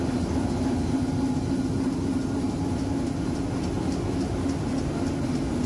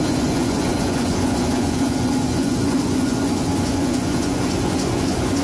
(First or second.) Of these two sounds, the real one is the first